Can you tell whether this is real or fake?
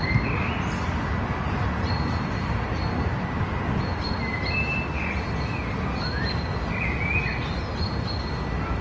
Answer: real